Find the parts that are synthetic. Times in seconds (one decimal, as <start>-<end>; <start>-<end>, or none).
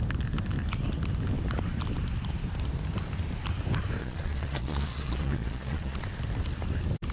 4.0-6.0